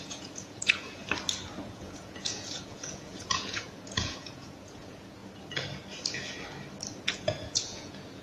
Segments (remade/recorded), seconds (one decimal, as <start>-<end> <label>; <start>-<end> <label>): 0.0-1.0 remade; 1.0-1.6 recorded; 1.6-5.2 remade; 5.2-7.0 recorded; 7.0-8.2 remade